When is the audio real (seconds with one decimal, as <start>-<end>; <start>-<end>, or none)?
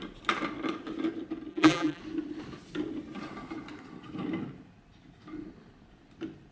0.0-1.5; 2.0-6.5